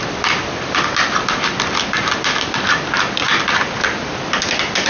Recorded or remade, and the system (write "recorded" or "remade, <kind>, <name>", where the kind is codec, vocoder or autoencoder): recorded